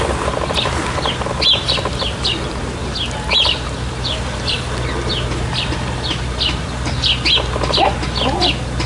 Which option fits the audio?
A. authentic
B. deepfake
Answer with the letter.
A